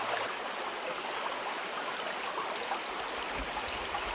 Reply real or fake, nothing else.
real